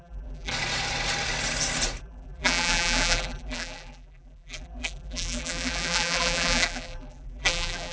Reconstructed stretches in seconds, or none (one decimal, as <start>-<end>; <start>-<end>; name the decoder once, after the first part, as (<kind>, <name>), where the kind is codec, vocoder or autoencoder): 0.0-0.5 (vocoder, BigVGAN v2); 2.0-7.9